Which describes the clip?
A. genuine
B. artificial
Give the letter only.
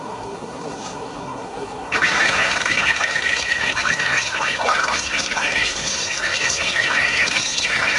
B